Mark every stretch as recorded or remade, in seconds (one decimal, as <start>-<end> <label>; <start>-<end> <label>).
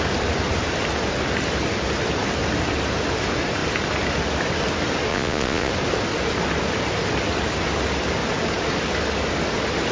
0.0-5.1 recorded; 5.1-5.7 remade; 5.7-9.9 recorded